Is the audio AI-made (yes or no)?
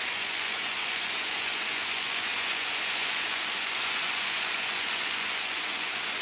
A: yes